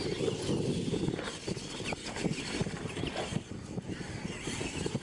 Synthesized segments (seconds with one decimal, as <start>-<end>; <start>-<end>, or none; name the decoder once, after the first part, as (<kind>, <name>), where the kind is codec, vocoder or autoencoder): none